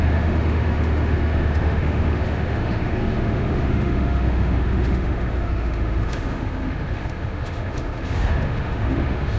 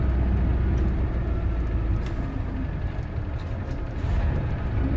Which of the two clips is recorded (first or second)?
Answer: second